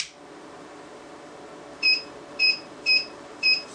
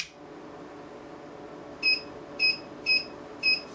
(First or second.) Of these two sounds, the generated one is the first